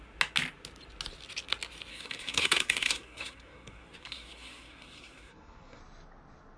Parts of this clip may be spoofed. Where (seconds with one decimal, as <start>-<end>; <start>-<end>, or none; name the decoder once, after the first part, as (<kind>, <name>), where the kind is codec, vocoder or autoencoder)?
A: 1.9-5.8 (codec, SNAC)